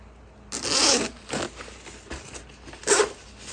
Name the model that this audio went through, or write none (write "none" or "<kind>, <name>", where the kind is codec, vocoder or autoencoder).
none